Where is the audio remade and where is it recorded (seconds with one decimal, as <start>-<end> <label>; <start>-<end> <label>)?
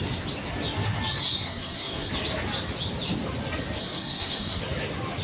0.0-1.2 recorded; 1.2-2.1 remade; 2.1-3.8 recorded; 3.8-4.6 remade; 4.6-5.2 recorded